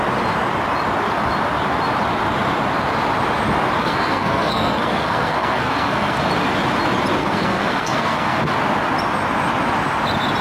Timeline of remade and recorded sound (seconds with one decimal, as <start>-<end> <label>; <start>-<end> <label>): 0.0-3.8 recorded; 3.8-6.3 remade; 6.3-7.2 recorded; 7.2-8.4 remade; 8.4-10.4 recorded